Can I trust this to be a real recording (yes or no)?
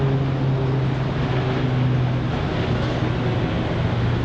yes